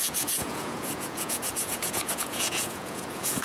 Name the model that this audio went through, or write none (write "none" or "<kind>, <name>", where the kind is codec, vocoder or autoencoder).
vocoder, Vocos